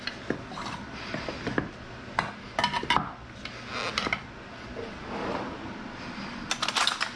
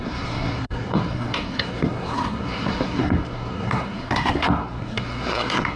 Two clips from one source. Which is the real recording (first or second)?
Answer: first